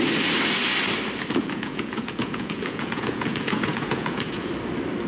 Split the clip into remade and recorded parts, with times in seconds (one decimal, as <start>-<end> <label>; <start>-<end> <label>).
0.0-1.4 recorded; 1.4-4.5 remade; 4.5-5.1 recorded